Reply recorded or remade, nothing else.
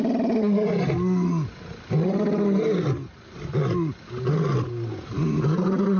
recorded